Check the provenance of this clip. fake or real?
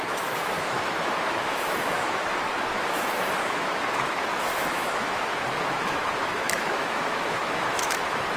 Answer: fake